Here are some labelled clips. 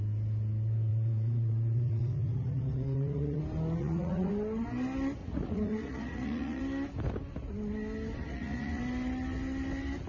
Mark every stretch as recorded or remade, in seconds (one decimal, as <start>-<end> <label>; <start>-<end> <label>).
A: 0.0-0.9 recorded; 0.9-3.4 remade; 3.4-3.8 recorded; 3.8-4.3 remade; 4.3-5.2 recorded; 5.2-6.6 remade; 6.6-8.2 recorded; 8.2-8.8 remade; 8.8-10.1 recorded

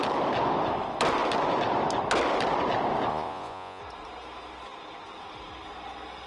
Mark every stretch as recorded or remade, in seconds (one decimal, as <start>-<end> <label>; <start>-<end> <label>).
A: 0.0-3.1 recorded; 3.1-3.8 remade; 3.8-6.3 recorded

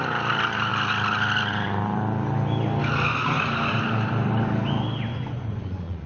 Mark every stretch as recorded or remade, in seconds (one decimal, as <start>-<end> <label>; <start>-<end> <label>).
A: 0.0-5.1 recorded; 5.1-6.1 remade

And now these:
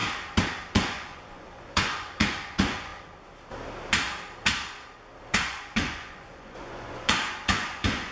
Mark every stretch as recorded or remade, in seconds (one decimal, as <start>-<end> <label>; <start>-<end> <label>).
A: 0.0-0.7 recorded; 0.7-2.9 remade; 2.9-5.3 recorded; 5.3-8.1 remade